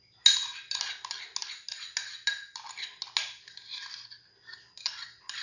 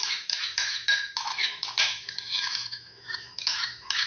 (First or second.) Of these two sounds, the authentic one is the first